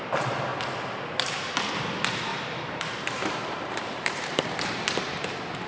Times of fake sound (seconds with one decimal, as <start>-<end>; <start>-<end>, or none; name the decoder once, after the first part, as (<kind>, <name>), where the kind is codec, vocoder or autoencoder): 2.3-5.0 (vocoder, BigVGAN v2)